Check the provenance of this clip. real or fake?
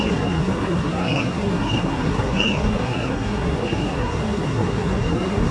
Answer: fake